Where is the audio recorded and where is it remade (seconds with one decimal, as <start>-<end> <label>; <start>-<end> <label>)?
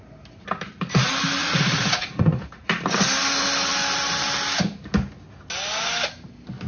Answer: 0.0-1.4 recorded; 1.4-2.7 remade; 2.7-6.7 recorded